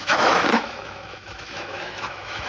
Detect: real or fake fake